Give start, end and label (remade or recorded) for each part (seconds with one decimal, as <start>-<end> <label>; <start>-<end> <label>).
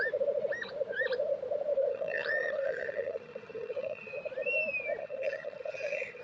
0.0-1.9 recorded; 1.9-4.2 remade; 4.2-5.0 recorded; 5.0-6.2 remade